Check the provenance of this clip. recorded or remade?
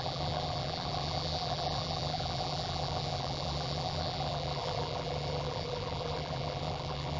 remade